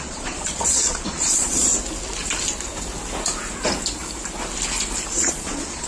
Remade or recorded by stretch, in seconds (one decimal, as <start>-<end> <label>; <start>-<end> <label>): 0.0-1.7 remade; 1.7-5.2 recorded; 5.2-5.9 remade